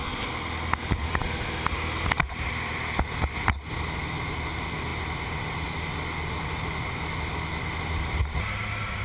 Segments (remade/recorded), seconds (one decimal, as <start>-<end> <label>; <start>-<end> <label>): 0.0-9.0 recorded